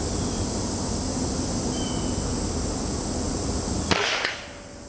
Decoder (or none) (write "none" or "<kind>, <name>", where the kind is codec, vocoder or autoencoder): none